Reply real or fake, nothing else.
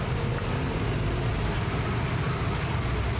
real